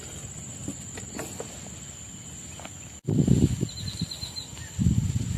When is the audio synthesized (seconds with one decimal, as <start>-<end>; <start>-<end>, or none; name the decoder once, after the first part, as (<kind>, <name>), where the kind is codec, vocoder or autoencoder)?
none